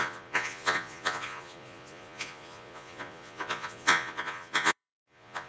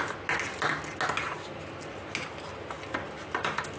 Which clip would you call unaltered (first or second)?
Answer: second